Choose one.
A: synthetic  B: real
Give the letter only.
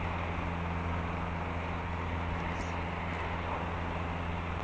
B